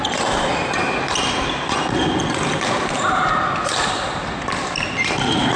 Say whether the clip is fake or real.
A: real